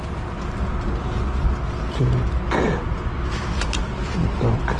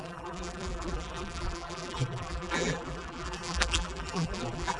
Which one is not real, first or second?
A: second